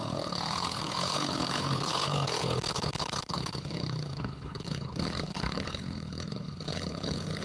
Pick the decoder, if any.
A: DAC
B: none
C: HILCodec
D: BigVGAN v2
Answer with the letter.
C